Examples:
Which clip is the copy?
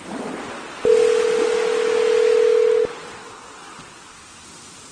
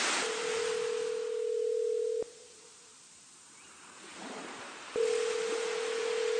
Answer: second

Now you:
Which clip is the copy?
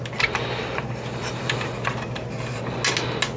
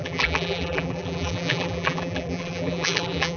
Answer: second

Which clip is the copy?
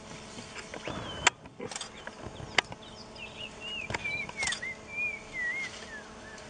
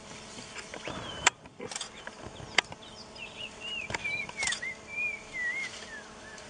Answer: second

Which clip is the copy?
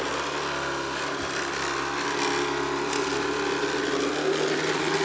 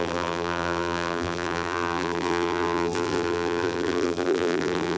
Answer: second